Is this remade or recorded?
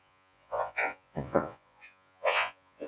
remade